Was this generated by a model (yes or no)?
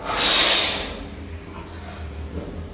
no